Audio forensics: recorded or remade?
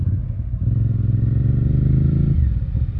recorded